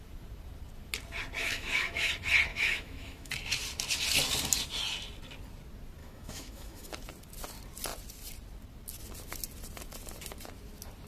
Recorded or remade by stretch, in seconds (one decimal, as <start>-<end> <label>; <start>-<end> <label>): 0.0-1.4 recorded; 1.4-2.1 remade; 2.1-2.5 recorded; 2.5-3.3 remade; 3.3-6.0 recorded; 6.0-6.9 remade; 6.9-11.1 recorded